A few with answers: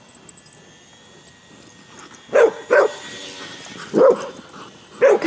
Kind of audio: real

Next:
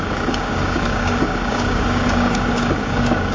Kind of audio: fake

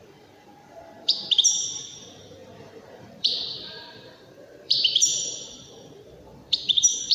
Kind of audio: fake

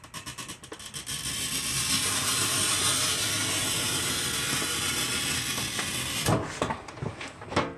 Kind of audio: real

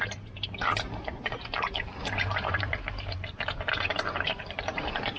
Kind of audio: fake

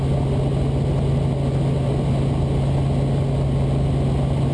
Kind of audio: real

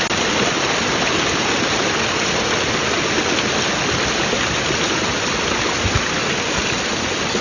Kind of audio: real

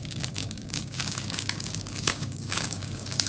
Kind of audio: fake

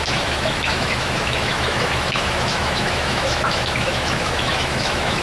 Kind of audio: fake